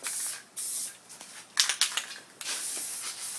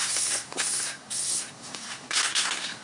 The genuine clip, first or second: first